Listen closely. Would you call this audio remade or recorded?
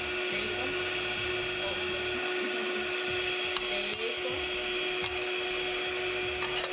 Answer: recorded